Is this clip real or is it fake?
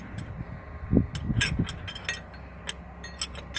real